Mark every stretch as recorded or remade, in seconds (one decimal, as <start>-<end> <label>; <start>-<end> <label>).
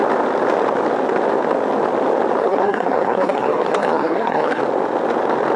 0.0-2.4 recorded; 2.4-4.6 remade; 4.6-5.6 recorded